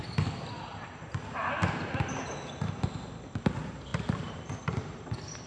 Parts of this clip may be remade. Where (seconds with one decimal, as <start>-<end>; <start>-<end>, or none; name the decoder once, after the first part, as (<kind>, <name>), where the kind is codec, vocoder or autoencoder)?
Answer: 3.9-4.4 (vocoder, BigVGAN v2)